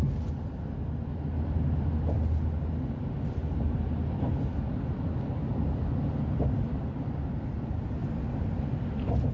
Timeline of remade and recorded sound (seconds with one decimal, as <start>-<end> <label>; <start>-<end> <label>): 0.0-9.3 recorded